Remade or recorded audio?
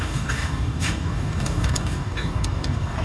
remade